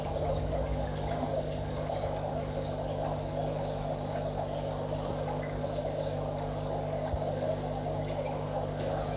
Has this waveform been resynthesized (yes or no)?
yes